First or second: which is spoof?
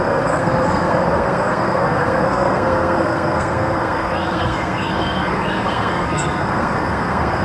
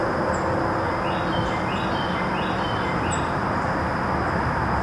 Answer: first